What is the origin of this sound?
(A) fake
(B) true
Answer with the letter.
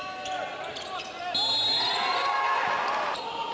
B